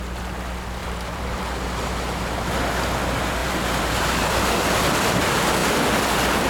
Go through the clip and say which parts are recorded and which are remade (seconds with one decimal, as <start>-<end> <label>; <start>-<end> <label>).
0.0-0.8 recorded; 0.8-1.4 remade; 1.4-3.4 recorded; 3.4-4.3 remade; 4.3-6.5 recorded